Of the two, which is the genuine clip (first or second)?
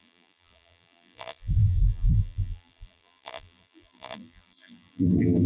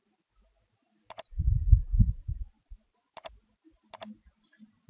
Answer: second